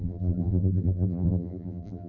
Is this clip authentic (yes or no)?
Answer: no